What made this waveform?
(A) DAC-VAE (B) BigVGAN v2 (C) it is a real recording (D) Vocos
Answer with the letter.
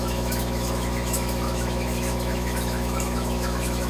A